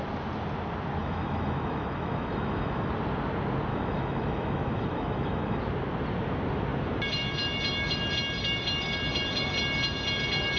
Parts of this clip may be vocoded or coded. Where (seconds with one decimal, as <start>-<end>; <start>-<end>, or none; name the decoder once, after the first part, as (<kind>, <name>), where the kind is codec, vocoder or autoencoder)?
1.0-2.9 (autoencoder, DAC-VAE); 3.7-5.6